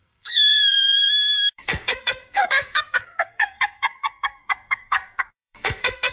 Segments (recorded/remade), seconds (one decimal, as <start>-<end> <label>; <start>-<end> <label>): 0.0-6.1 remade